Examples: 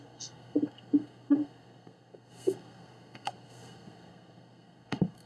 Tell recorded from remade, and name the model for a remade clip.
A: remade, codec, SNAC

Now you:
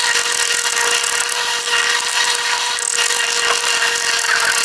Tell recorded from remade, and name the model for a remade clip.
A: recorded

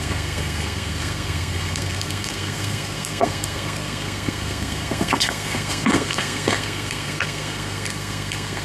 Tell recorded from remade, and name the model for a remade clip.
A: remade, codec, SNAC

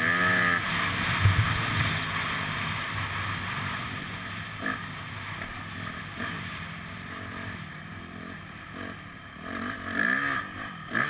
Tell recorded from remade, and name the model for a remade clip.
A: recorded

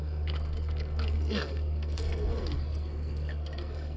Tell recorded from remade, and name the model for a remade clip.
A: remade, codec, SNAC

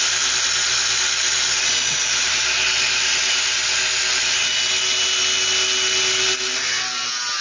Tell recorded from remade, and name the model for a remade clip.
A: recorded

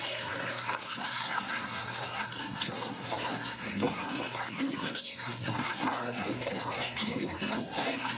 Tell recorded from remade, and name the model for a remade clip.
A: remade, codec, SNAC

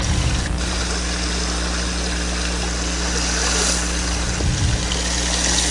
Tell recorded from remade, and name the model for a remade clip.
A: recorded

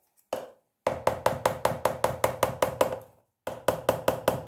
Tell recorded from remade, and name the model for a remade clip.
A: recorded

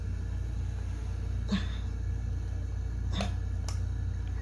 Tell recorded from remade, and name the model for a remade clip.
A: recorded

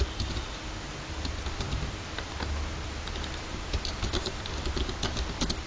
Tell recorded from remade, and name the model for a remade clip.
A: recorded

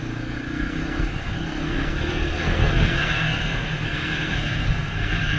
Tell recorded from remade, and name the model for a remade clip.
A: remade, codec, SNAC